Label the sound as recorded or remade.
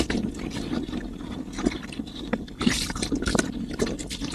recorded